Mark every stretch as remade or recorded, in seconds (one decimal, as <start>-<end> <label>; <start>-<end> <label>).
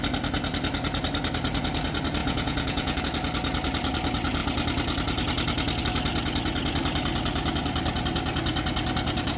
0.0-2.2 recorded; 2.2-3.0 remade; 3.0-9.4 recorded